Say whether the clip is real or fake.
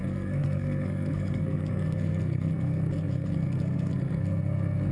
fake